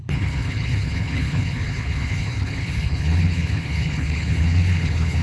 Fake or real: fake